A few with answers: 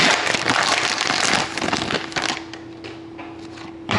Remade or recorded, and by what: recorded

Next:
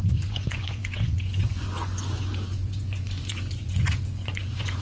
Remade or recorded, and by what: remade, vocoder, Vocos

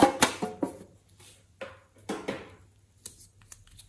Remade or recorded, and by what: recorded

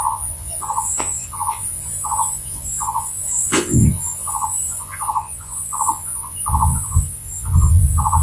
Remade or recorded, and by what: remade, vocoder, Vocos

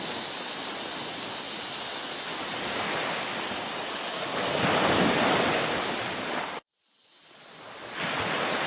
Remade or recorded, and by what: recorded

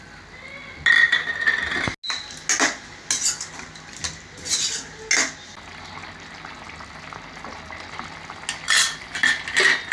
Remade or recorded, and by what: recorded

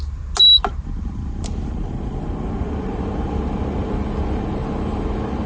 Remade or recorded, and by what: recorded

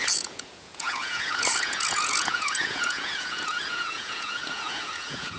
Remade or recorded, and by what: remade, vocoder, Vocos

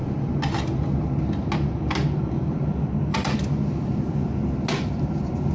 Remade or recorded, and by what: recorded